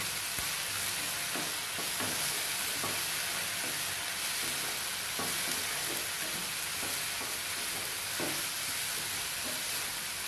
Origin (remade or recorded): recorded